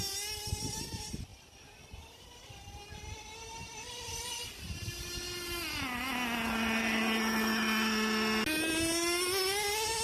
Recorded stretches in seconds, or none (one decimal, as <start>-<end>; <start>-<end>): 0.0-1.3; 4.3-10.0